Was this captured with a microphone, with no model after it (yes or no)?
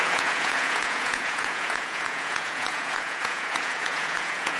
no